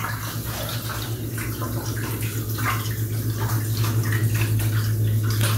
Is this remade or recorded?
recorded